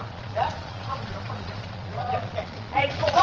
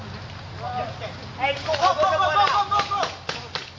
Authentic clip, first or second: second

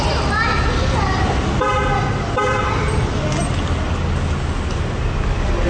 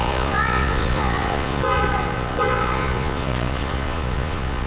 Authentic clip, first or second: first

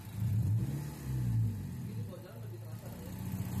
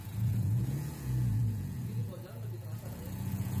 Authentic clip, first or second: first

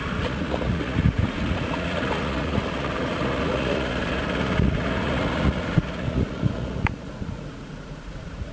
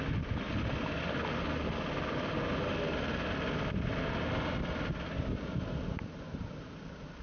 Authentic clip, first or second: second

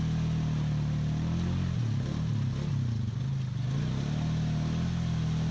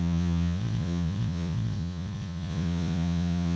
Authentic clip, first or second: first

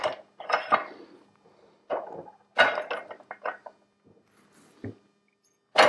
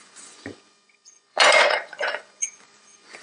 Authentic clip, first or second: first